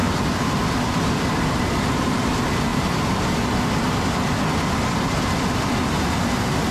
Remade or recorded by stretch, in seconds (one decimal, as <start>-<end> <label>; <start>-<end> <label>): 0.0-1.7 remade; 1.7-2.7 recorded; 2.7-6.7 remade